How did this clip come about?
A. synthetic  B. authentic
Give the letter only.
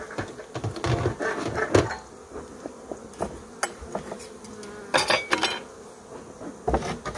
B